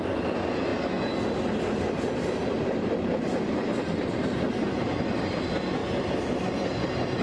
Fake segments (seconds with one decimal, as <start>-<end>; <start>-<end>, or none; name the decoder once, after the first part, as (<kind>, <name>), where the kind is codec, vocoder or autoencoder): none